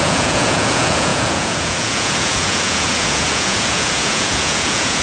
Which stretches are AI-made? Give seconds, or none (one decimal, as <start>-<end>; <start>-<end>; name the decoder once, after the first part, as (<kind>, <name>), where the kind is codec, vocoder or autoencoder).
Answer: 0.0-5.0 (vocoder, Vocos)

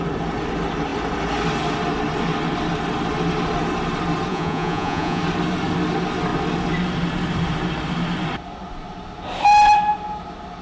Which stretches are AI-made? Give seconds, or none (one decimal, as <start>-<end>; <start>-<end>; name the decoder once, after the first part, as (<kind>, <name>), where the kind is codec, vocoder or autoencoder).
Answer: 4.3-5.2 (vocoder, Vocos)

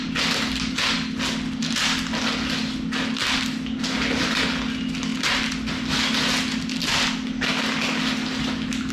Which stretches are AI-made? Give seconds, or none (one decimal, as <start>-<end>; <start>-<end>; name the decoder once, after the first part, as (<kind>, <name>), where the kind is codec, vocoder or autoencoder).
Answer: none

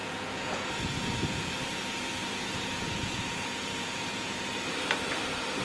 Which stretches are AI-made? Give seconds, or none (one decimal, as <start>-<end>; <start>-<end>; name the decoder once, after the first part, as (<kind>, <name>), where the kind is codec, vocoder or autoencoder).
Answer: 0.0-1.5 (vocoder, Vocos); 2.2-4.5

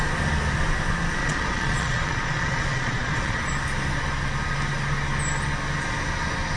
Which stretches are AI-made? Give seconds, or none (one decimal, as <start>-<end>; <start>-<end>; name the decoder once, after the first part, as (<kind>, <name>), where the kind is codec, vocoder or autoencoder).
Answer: 1.2-3.4 (vocoder, Vocos)

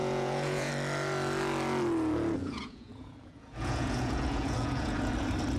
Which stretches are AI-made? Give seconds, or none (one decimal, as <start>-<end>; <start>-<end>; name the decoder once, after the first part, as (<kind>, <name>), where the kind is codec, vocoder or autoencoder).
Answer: 0.0-0.7 (vocoder, Vocos); 2.4-5.1

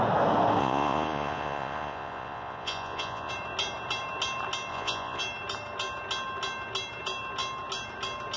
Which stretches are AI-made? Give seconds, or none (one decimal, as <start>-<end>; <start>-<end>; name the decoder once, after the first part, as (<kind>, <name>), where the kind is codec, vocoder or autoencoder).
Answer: 0.6-3.3 (vocoder, Vocos); 4.7-5.2

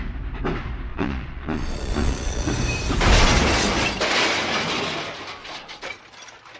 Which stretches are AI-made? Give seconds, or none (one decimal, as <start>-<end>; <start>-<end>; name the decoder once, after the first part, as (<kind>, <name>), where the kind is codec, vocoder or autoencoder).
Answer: 0.9-2.5 (vocoder, Vocos); 5.4-5.9